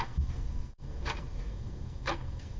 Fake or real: fake